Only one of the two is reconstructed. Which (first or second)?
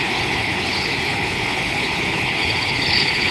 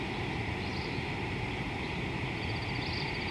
first